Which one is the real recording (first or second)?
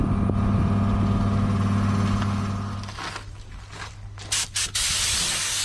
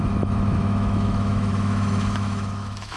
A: first